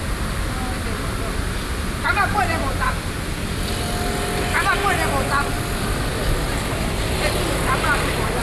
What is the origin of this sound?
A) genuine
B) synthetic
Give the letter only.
A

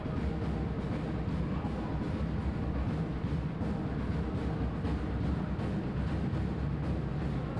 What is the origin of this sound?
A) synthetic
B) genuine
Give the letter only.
B